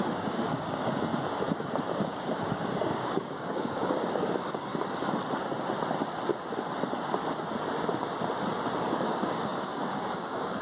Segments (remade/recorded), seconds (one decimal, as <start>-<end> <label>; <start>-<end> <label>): 0.0-1.1 remade; 1.1-1.9 recorded; 1.9-4.7 remade; 4.7-8.8 recorded; 8.8-10.6 remade